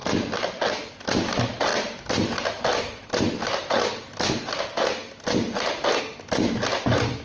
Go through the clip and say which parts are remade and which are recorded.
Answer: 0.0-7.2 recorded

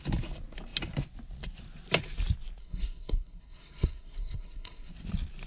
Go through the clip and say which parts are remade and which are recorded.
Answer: 0.0-2.6 recorded; 2.6-4.9 remade; 4.9-5.5 recorded

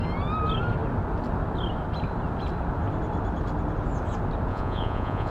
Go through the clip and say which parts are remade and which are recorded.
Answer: 0.0-4.5 recorded; 4.5-5.3 remade

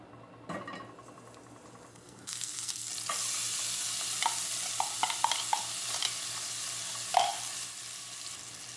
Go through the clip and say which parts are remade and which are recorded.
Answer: 0.0-1.9 recorded; 1.9-2.9 remade; 2.9-8.8 recorded

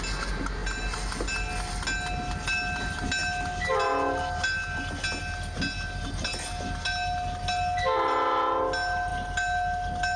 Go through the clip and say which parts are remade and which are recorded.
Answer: 0.0-10.2 recorded